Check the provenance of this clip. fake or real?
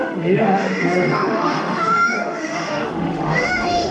fake